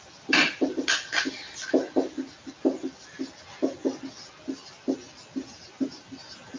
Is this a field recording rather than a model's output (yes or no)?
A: yes